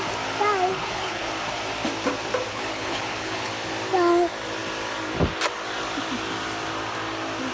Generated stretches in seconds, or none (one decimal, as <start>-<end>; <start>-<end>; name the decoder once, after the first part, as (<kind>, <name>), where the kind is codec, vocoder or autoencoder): 0.7-1.3 (codec, HILCodec); 2.5-3.5